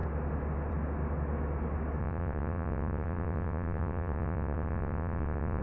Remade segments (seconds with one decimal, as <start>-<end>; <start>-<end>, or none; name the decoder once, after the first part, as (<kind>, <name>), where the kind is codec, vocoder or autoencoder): 2.0-5.6 (vocoder, WaveNeXt)